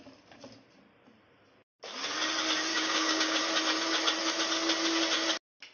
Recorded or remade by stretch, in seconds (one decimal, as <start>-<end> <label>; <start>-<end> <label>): 0.0-2.7 recorded; 2.7-3.4 remade; 3.4-5.7 recorded